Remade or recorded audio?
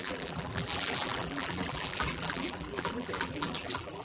remade